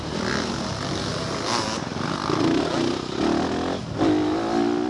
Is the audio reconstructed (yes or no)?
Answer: no